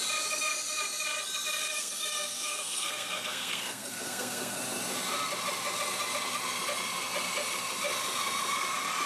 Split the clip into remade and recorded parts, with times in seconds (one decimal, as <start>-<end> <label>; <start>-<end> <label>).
0.0-1.6 recorded; 1.6-4.6 remade; 4.6-9.1 recorded